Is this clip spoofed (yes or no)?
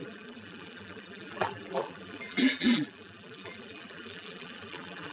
yes